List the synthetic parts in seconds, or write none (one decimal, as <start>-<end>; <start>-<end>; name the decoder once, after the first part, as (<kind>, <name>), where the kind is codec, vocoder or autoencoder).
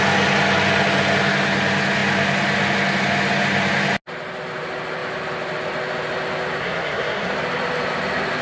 6.6-7.3 (codec, SNAC)